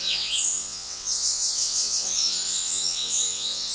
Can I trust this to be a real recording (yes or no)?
no